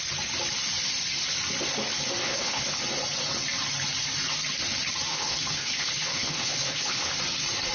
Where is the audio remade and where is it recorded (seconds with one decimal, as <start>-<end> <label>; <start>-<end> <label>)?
0.0-2.2 recorded; 2.2-2.8 remade; 2.8-5.1 recorded; 5.1-7.1 remade; 7.1-7.7 recorded